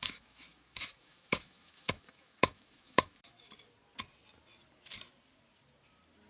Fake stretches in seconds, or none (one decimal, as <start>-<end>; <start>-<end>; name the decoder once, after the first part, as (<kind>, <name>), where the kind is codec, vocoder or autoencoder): 0.0-3.5 (autoencoder, DAC-VAE)